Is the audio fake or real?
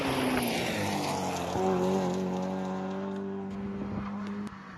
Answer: real